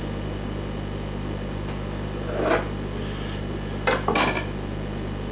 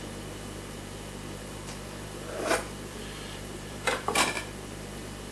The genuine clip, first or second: first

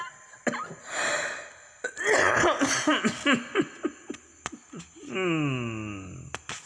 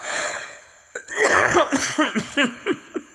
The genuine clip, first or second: first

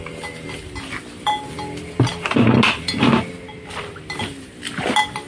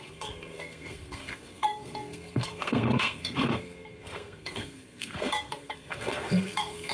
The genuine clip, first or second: first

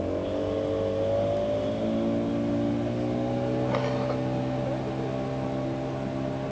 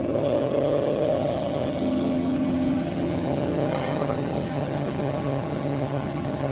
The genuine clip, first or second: first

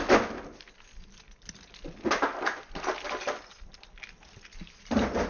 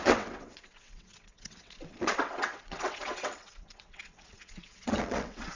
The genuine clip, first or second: first